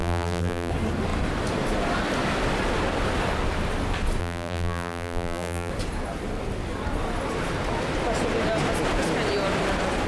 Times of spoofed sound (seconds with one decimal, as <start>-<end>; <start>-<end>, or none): 0.0-0.7; 4.2-5.7